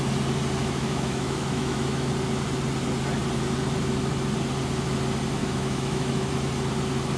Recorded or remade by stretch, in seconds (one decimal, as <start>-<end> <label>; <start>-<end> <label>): 0.0-0.6 recorded; 0.6-2.1 remade; 2.1-5.4 recorded; 5.4-6.3 remade; 6.3-7.2 recorded

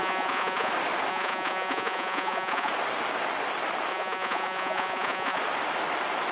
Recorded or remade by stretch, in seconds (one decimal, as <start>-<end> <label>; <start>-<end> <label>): 0.0-0.7 remade; 0.7-1.1 recorded; 1.1-2.7 remade; 2.7-3.9 recorded; 3.9-5.4 remade; 5.4-6.3 recorded

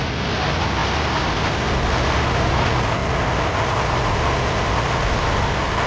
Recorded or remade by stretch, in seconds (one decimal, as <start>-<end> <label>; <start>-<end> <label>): 0.0-5.9 recorded

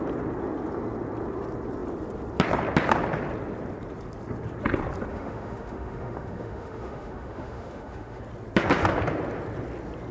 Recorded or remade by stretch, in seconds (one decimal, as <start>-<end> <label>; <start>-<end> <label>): 0.0-5.1 recorded; 5.1-8.2 remade; 8.2-10.1 recorded

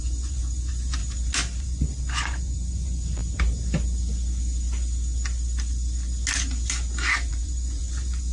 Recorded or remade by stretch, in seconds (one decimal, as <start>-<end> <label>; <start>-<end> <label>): 0.0-1.0 remade; 1.0-1.6 recorded; 1.6-3.2 remade; 3.2-7.3 recorded; 7.3-8.3 remade

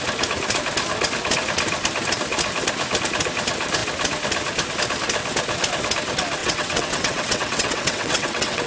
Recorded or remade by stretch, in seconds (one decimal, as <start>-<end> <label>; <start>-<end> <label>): 0.0-6.4 recorded; 6.4-8.7 remade

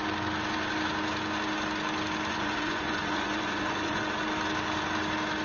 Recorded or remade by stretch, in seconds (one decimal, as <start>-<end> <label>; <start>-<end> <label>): 0.0-2.3 recorded; 2.3-4.0 remade; 4.0-5.4 recorded

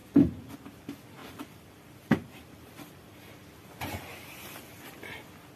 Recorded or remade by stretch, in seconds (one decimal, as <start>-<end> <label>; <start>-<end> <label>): 0.0-0.5 remade; 0.5-1.2 recorded; 1.2-4.6 remade; 4.6-5.6 recorded